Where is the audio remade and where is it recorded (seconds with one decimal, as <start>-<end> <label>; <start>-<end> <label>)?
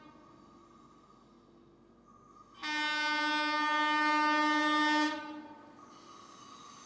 0.0-6.9 recorded